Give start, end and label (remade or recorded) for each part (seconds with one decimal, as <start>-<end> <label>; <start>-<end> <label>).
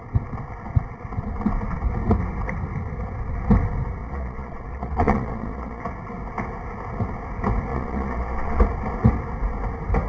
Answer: 0.0-4.0 recorded; 4.0-5.8 remade; 5.8-7.7 recorded; 7.7-8.6 remade; 8.6-10.1 recorded